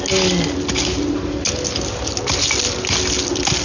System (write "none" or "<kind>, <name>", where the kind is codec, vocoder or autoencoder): none